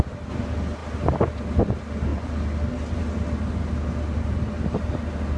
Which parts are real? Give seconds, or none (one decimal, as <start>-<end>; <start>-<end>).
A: 0.0-5.4